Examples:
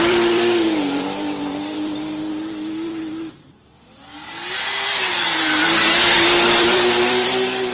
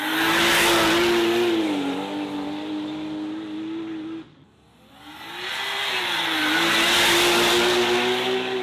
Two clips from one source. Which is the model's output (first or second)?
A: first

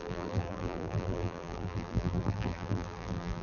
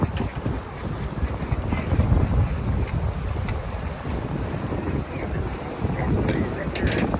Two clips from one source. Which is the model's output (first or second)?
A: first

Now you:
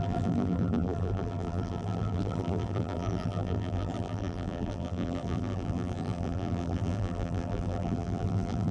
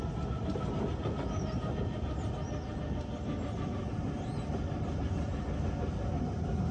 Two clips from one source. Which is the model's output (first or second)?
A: first